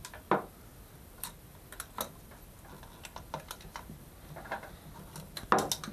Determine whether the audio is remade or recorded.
recorded